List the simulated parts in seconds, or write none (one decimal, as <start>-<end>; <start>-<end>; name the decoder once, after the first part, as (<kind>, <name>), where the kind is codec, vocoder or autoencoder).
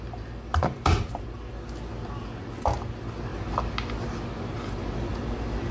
none